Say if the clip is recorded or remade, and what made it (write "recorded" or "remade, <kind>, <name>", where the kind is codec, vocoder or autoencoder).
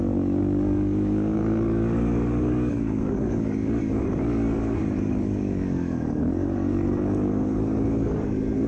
remade, codec, DAC